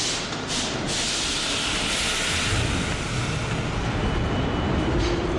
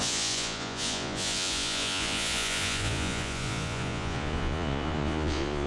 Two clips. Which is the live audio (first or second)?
first